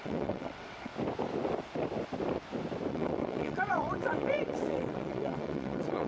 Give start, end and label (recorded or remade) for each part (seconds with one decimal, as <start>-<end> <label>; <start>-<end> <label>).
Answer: 0.0-0.9 remade; 0.9-2.9 recorded; 2.9-6.1 remade